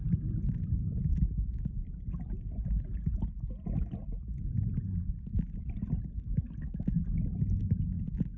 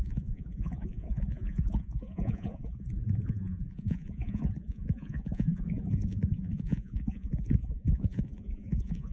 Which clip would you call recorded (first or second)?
first